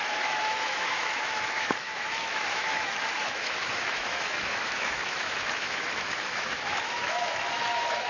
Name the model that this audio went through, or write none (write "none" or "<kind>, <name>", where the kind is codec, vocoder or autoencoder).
autoencoder, DAC-VAE